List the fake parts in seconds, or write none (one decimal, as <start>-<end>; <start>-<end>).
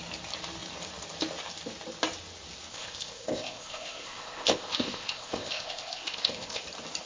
2.7-6.6